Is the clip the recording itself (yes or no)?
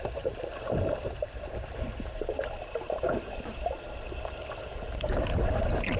yes